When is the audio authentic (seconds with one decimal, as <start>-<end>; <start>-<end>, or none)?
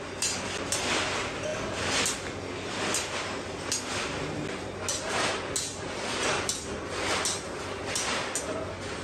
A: 0.0-9.0